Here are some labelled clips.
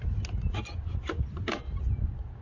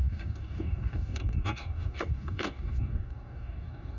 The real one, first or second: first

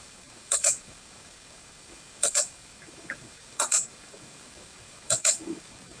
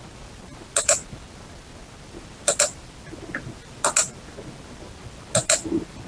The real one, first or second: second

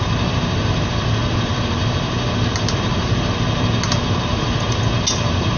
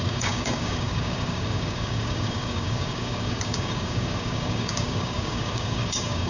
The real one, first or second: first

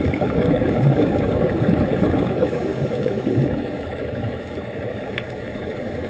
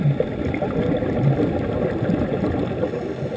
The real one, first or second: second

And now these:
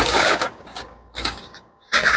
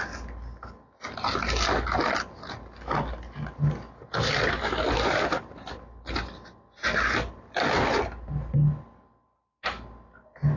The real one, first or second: second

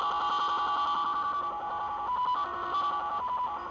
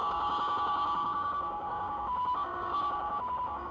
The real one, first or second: first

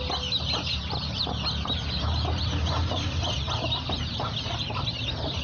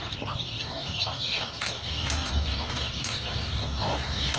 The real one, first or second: first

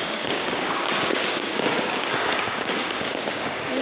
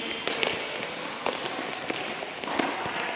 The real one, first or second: second